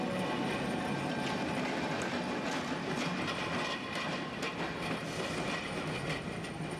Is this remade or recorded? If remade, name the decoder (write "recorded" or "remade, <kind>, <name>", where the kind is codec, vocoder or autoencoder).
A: recorded